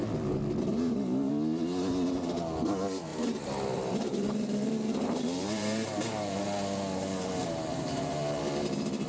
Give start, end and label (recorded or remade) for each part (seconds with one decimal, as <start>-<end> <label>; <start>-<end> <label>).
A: 0.0-0.7 recorded; 0.7-1.3 remade; 1.3-3.1 recorded; 3.1-6.4 remade; 6.4-7.4 recorded; 7.4-8.4 remade; 8.4-9.1 recorded